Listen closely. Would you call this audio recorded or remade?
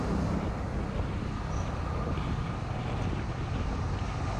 recorded